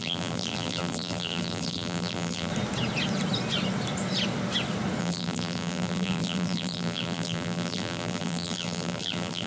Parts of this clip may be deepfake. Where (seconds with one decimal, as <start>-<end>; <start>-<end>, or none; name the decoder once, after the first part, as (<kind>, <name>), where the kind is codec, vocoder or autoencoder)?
0.0-2.5 (vocoder, BigVGAN v2); 5.0-9.5